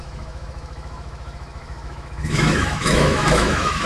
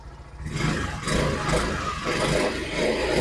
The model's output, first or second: first